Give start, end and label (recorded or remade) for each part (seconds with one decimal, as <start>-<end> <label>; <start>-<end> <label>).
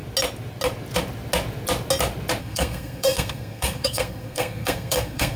0.0-2.4 recorded; 2.4-5.4 remade